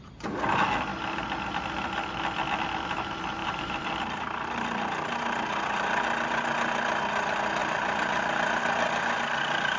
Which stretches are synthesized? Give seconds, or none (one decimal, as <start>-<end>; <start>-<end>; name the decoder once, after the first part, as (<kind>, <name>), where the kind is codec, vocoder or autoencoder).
3.4-3.9 (vocoder, BigVGAN v2); 7.6-8.6

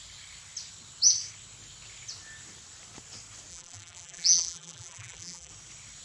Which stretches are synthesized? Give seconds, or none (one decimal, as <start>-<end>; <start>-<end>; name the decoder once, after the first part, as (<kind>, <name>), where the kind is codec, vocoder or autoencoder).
3.5-5.5 (vocoder, BigVGAN v2)

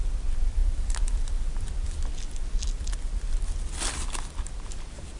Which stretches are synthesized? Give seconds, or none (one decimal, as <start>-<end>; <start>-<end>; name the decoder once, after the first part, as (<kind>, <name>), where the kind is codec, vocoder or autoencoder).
none

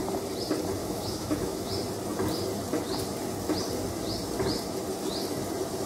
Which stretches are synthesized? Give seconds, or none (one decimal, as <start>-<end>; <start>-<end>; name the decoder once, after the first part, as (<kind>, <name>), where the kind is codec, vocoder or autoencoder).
0.8-1.7 (autoencoder, DAC-VAE)